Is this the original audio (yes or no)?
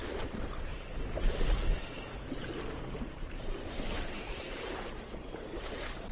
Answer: no